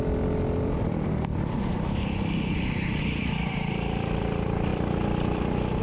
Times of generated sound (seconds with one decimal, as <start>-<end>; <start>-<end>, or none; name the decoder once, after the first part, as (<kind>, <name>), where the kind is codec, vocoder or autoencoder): 0.0-1.7 (vocoder, BigVGAN v2); 3.2-5.8